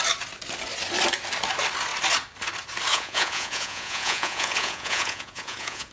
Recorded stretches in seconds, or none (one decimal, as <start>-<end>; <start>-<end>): 0.0-2.9